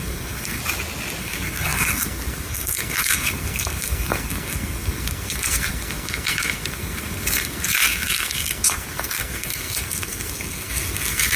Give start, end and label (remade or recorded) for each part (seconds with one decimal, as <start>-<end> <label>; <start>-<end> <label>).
0.0-0.6 remade; 0.6-1.2 recorded; 1.2-11.4 remade